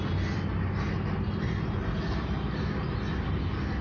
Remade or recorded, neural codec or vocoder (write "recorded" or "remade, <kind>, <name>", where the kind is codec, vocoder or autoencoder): recorded